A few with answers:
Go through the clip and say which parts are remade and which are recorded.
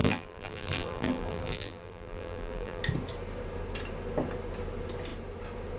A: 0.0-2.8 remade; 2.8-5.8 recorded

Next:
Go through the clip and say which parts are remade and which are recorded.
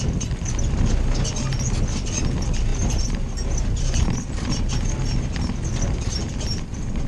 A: 0.0-2.7 recorded; 2.7-4.5 remade; 4.5-7.1 recorded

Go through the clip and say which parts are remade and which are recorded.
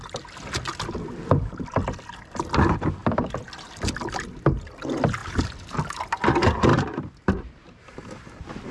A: 0.0-6.7 recorded; 6.7-8.7 remade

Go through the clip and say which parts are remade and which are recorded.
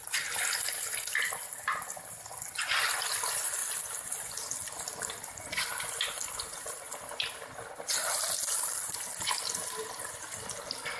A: 0.0-11.0 recorded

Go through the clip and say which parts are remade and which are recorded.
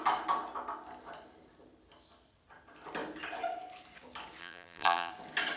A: 0.0-4.4 recorded; 4.4-5.1 remade; 5.1-5.6 recorded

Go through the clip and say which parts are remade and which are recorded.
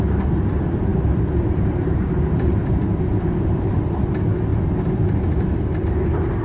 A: 0.0-0.9 recorded; 0.9-4.1 remade; 4.1-6.4 recorded